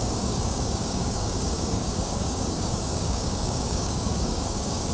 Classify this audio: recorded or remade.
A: remade